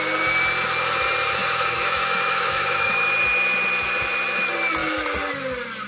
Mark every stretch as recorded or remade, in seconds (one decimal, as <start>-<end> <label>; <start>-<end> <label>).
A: 0.0-1.4 recorded; 1.4-3.1 remade; 3.1-5.9 recorded